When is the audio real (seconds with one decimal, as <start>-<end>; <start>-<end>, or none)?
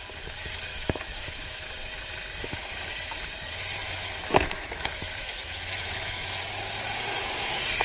0.0-0.7; 1.7-3.8; 6.4-7.8